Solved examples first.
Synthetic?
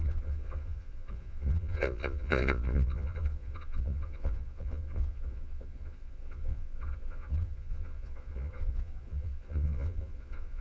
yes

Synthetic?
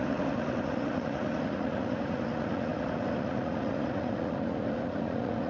yes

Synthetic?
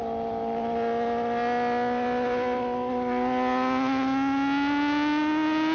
no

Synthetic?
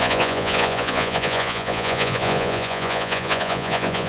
yes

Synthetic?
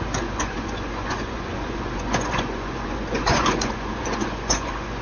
yes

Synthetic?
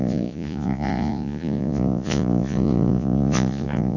yes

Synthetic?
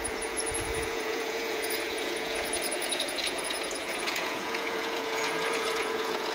yes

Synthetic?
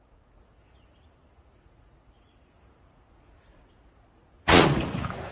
yes